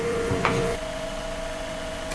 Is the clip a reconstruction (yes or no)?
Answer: yes